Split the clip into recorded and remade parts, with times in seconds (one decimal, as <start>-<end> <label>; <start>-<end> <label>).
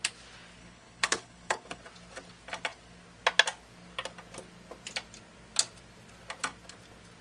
0.0-0.6 recorded; 0.6-1.8 remade; 1.8-7.2 recorded